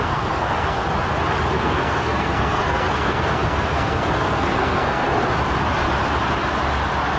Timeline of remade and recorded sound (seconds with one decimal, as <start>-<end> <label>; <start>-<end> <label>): 0.0-0.8 remade; 0.8-1.5 recorded; 1.5-5.0 remade; 5.0-7.2 recorded

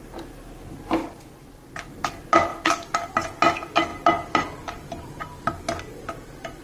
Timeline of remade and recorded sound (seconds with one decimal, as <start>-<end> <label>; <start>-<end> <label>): 0.0-6.6 recorded

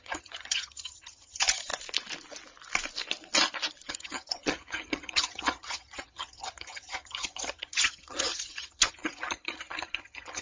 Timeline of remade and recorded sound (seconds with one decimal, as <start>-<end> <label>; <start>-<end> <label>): 0.0-1.7 remade; 1.7-3.9 recorded; 3.9-10.4 remade

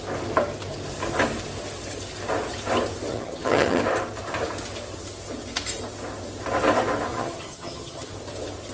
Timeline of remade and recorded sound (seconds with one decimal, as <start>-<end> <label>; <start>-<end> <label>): 0.0-3.1 recorded; 3.1-3.8 remade; 3.8-7.1 recorded; 7.1-8.1 remade; 8.1-8.7 recorded

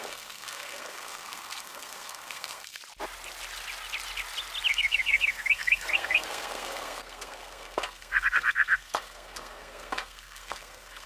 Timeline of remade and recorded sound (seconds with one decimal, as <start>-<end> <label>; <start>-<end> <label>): 0.0-2.8 remade; 2.8-4.7 recorded; 4.7-11.1 remade

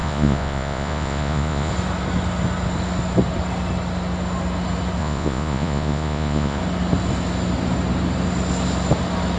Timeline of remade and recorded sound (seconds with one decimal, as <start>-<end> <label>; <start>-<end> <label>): 0.0-1.7 remade; 1.7-5.0 recorded; 5.0-6.6 remade; 6.6-9.4 recorded